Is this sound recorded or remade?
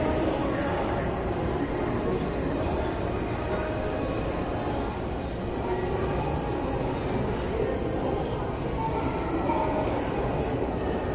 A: recorded